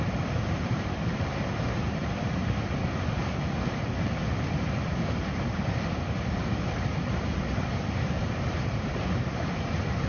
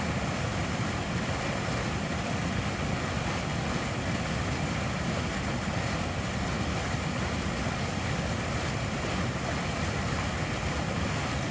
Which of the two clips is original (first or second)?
second